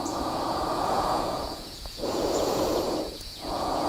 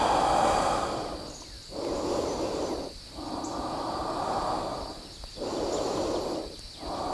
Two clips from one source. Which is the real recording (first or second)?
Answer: second